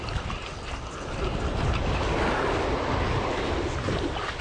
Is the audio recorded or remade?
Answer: recorded